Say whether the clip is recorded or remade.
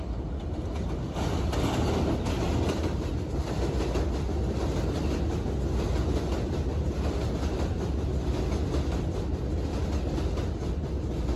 recorded